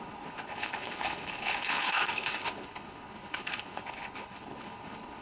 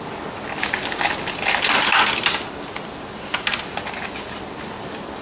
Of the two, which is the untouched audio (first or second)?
second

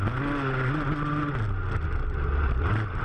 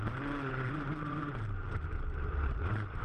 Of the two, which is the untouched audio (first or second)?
first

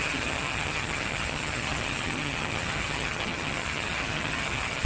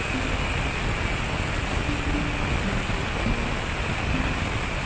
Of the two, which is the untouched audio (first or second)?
second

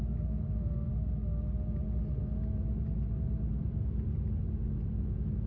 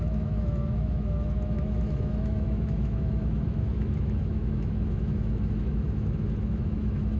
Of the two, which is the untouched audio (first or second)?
first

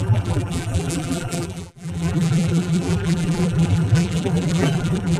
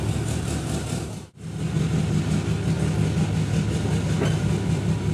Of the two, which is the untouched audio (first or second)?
second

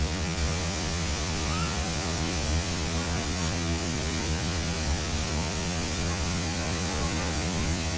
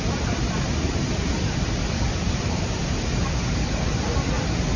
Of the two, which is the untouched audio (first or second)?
second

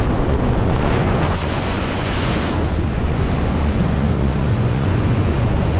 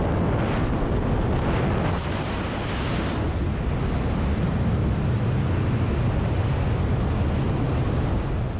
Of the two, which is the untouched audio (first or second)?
second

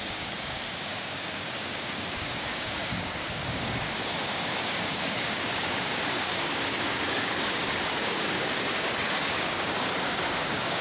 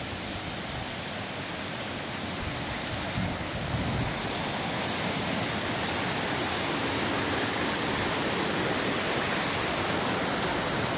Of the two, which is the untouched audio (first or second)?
second